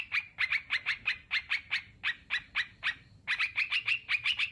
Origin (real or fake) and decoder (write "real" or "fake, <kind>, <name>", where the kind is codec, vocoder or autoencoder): real